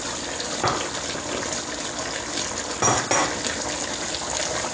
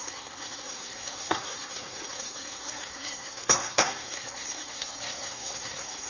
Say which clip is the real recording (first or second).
first